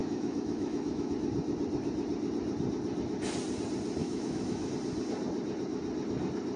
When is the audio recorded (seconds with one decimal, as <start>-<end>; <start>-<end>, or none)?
1.1-4.0; 4.7-6.6

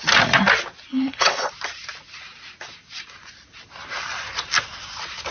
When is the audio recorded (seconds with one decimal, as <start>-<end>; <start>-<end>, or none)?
0.0-0.9; 1.5-5.3

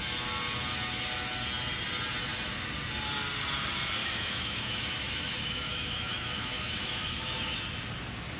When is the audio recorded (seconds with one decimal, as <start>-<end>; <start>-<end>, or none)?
0.0-4.0; 7.6-8.4

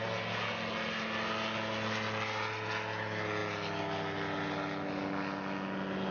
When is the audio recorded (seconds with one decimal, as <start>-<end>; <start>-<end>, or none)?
0.0-6.1